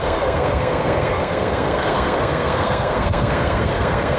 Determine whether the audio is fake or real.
fake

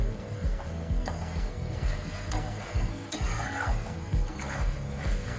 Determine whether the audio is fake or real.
fake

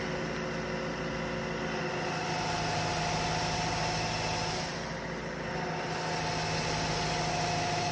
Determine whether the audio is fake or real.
real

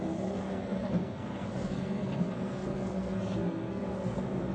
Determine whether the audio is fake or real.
fake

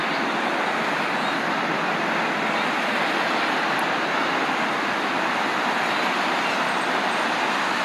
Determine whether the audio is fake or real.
real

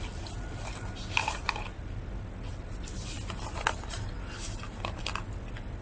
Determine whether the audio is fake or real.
real